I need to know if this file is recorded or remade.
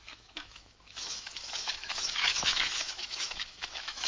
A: remade